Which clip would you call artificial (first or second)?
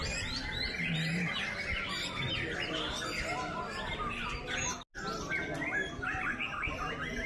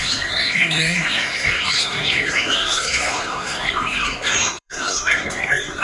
second